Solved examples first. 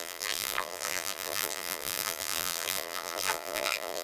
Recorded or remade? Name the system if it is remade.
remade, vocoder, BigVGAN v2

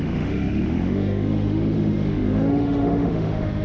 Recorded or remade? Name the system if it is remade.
remade, autoencoder, DAC-VAE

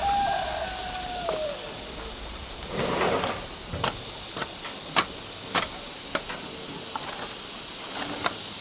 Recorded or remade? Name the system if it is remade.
recorded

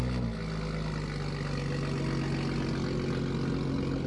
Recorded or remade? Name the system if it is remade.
recorded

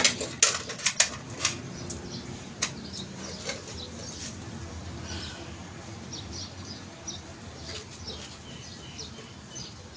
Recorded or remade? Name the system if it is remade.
recorded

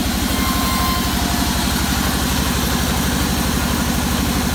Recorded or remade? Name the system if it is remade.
recorded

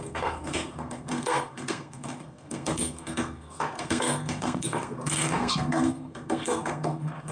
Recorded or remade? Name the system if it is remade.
remade, codec, SNAC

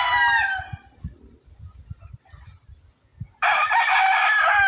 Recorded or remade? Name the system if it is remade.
recorded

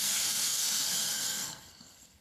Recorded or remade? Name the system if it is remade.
remade, codec, SNAC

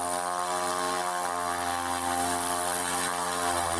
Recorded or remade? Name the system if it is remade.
recorded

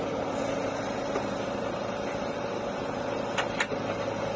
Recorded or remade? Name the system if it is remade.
recorded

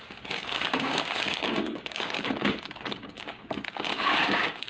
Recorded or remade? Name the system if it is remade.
remade, codec, DAC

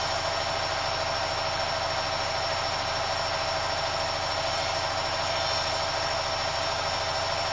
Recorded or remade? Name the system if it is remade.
recorded